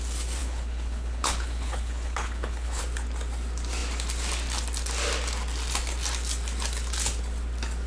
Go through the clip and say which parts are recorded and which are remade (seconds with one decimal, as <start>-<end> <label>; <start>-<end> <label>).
0.0-0.4 recorded; 0.4-2.8 remade; 2.8-7.9 recorded